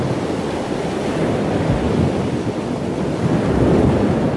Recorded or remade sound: recorded